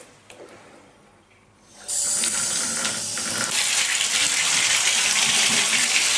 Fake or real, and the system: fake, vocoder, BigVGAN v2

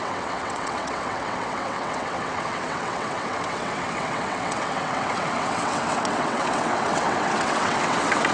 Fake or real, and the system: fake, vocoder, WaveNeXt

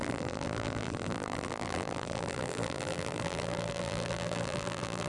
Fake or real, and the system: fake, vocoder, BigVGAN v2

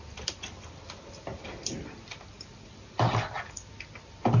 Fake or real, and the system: real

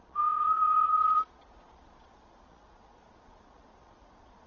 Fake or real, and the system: fake, vocoder, Vocos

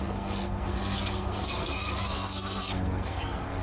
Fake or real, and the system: fake, codec, SNAC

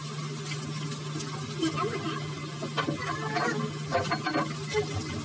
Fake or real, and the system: real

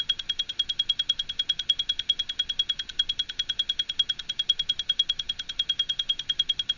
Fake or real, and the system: real